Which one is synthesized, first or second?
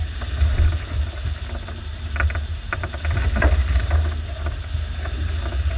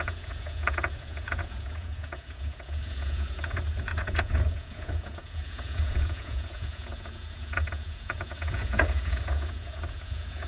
second